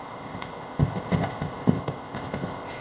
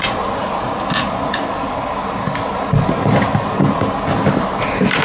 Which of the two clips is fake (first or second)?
first